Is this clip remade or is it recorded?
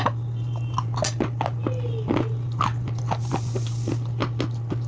recorded